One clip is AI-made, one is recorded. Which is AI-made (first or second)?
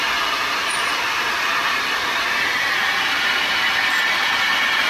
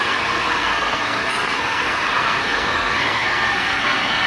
second